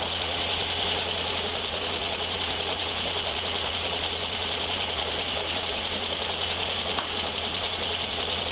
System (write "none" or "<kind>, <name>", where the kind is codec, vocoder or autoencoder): vocoder, Vocos